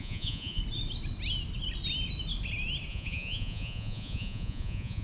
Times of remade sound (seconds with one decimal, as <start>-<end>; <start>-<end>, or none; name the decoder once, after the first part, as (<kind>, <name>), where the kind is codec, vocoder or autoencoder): 0.0-0.6 (vocoder, Vocos); 2.9-5.0